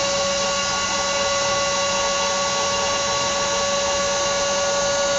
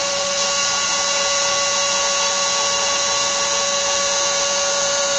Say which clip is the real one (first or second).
first